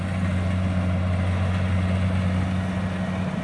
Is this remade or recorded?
recorded